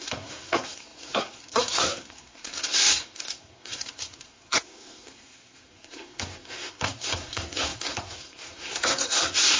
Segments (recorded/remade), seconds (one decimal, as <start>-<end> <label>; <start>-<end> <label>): 0.0-9.6 remade